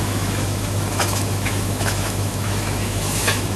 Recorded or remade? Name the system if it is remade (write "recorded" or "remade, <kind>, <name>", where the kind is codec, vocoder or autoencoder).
remade, autoencoder, DAC-VAE